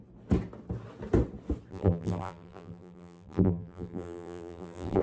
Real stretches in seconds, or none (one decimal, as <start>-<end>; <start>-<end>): 0.0-1.7